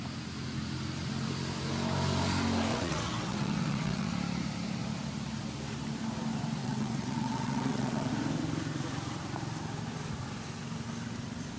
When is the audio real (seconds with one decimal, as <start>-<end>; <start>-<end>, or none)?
0.0-2.7; 4.1-6.6; 8.1-11.6